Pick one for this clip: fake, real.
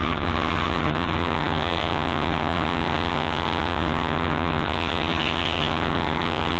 fake